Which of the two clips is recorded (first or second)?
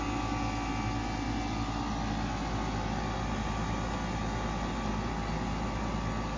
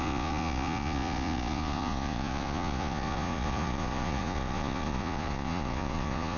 first